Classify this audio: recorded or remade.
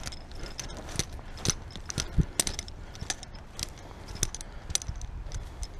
recorded